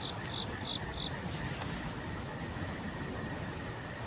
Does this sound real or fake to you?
real